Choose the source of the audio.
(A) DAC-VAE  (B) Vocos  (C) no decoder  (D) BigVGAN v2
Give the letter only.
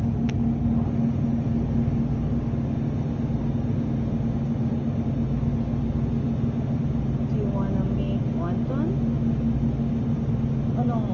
C